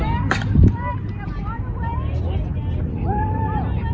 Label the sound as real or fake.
fake